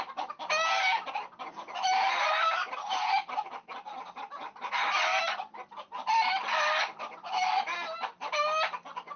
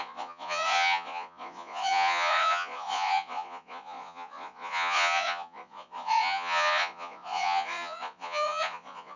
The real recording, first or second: first